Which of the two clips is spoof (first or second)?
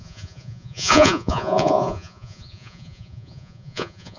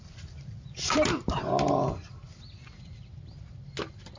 first